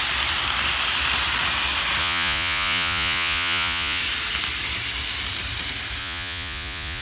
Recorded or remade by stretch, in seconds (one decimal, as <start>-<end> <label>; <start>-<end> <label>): 0.0-2.0 recorded; 2.0-4.0 remade; 4.0-6.0 recorded; 6.0-7.0 remade